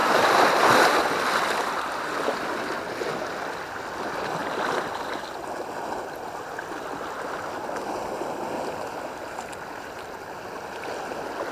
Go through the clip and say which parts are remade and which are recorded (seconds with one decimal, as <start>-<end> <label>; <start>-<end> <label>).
0.0-11.5 recorded